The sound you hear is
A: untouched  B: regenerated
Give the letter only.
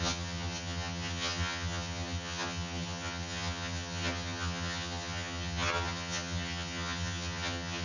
B